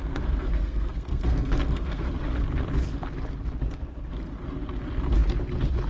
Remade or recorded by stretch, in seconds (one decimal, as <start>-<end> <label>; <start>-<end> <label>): 0.0-2.1 remade; 2.1-5.9 recorded